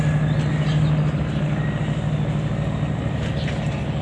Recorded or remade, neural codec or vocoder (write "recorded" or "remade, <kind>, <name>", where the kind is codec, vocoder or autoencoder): recorded